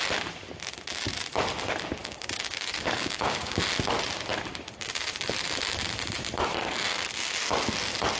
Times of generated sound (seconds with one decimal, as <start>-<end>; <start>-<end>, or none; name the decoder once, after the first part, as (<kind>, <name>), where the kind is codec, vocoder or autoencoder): 2.0-3.6 (codec, DAC)

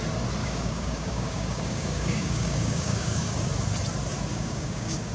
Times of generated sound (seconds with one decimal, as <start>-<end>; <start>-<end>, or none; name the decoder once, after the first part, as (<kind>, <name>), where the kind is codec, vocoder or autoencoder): 0.4-3.5 (codec, DAC); 4.3-5.1

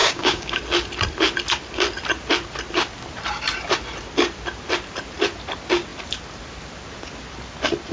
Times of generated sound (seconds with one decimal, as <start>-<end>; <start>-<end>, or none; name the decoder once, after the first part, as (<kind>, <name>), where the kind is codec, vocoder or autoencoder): 0.0-0.6 (codec, DAC)

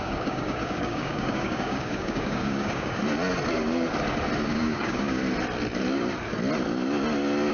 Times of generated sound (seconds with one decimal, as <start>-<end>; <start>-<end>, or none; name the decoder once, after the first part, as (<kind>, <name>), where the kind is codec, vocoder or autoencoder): 0.0-3.0 (codec, DAC); 4.5-5.2

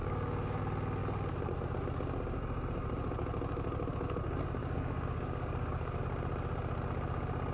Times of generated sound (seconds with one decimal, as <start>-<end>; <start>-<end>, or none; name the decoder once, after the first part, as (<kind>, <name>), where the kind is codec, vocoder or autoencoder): 0.0-0.6 (codec, DAC); 4.6-6.0

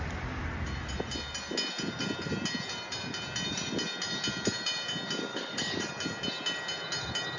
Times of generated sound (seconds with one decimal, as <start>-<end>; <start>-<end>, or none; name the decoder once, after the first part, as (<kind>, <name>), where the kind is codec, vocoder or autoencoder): 5.3-5.9 (codec, DAC)

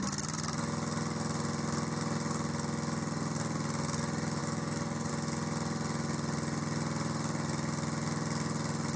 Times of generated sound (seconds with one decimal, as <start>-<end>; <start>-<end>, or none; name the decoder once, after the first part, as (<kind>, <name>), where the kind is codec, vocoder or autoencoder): 4.4-5.1 (codec, DAC)